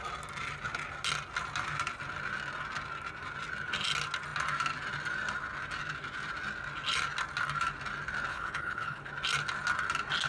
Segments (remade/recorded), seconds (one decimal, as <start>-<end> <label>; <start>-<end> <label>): 0.0-8.3 recorded; 8.3-9.1 remade; 9.1-10.3 recorded